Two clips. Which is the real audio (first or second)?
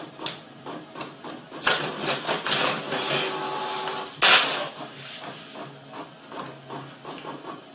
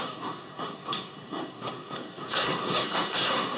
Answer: first